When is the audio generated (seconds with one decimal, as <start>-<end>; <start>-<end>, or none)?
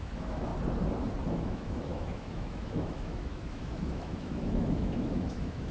0.0-0.5; 1.3-5.7